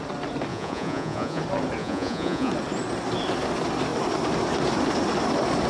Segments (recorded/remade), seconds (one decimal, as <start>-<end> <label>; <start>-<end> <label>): 0.0-0.5 recorded; 0.5-1.4 remade; 1.4-1.8 recorded; 1.8-2.5 remade; 2.5-5.7 recorded